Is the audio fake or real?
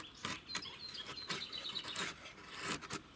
real